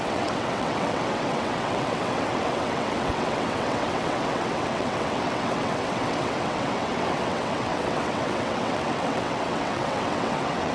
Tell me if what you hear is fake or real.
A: fake